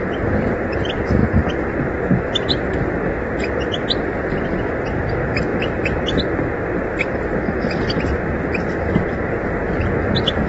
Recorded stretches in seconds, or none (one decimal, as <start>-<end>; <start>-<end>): 0.0-10.5